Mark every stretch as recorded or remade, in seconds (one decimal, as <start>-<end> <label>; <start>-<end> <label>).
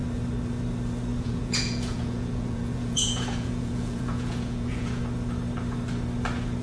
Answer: 0.0-1.1 recorded; 1.1-5.0 remade; 5.0-6.6 recorded